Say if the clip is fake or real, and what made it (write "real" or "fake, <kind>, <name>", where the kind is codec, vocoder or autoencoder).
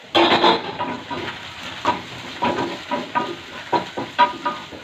real